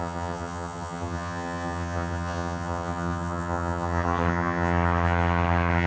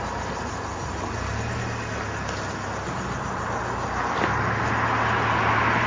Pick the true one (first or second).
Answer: second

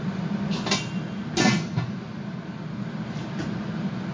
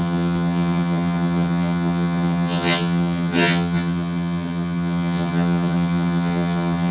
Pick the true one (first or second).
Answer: first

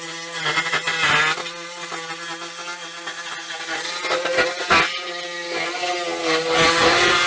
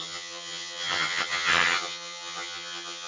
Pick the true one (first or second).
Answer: first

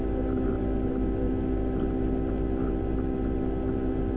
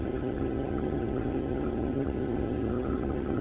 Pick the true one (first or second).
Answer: first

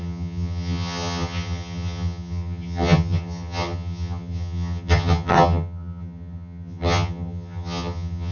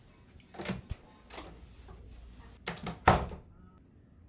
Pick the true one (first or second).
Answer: second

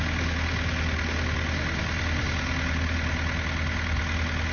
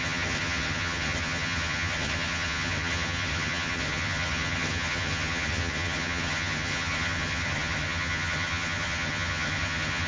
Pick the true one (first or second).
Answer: first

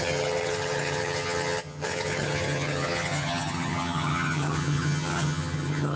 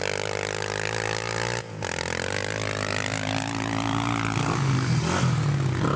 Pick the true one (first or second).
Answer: second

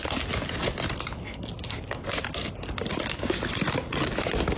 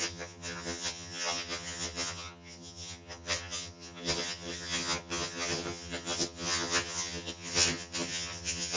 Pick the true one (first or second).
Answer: first